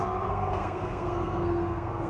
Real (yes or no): no